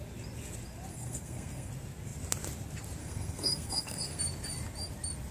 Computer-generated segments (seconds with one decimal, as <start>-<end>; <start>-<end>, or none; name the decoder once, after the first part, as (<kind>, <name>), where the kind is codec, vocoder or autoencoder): 0.9-1.7 (codec, SNAC); 3.0-4.2